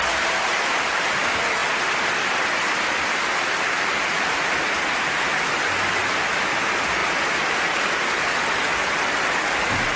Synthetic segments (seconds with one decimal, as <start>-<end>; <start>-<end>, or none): none